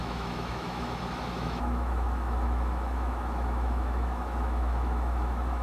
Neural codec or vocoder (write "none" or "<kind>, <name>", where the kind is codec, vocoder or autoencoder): autoencoder, DAC-VAE